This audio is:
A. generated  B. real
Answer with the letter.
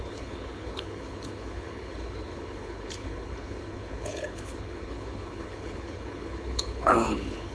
A